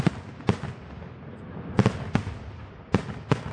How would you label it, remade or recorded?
recorded